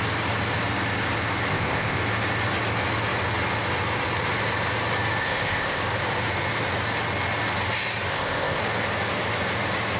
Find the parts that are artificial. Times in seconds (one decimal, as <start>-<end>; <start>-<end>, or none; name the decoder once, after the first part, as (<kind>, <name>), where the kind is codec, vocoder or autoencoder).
1.5-2.0 (codec, ZipCodec); 5.2-5.8; 8.1-8.6